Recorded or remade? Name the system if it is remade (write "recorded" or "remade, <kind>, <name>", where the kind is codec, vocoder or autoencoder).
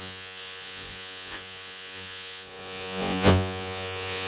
remade, vocoder, Vocos